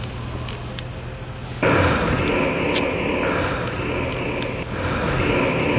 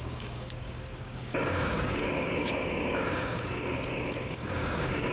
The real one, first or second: first